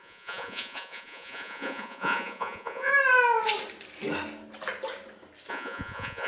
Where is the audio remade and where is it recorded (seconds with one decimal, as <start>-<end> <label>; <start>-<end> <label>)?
0.0-2.9 remade; 2.9-5.5 recorded; 5.5-6.3 remade